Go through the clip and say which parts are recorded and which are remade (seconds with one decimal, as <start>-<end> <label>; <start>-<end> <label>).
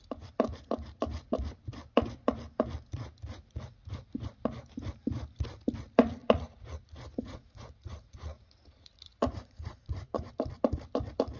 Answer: 0.0-6.2 recorded; 6.2-10.3 remade; 10.3-11.4 recorded